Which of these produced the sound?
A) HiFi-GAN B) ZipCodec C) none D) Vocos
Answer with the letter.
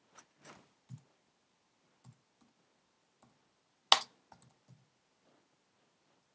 C